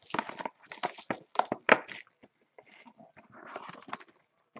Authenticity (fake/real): real